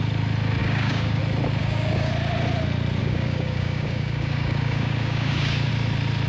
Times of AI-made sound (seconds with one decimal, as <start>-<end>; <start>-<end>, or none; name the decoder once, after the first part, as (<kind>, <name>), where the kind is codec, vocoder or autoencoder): 0.6-1.2 (codec, DAC); 1.6-2.1; 3.0-5.7